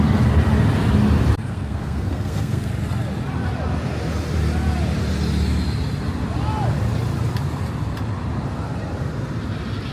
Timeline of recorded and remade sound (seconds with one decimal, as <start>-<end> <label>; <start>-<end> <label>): 0.0-1.4 recorded; 1.4-2.7 remade; 2.7-9.9 recorded